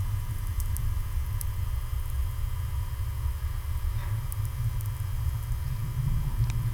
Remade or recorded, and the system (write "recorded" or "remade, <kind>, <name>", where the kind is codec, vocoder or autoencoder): recorded